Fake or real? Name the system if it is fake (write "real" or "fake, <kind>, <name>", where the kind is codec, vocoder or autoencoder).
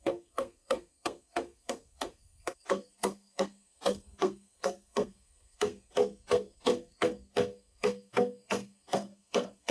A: fake, codec, SNAC